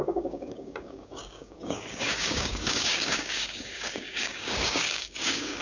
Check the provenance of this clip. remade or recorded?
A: remade